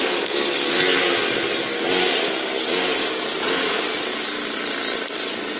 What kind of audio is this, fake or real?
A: real